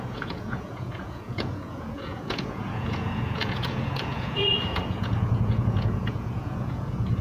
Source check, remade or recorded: remade